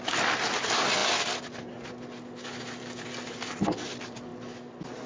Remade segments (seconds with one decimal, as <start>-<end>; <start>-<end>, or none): none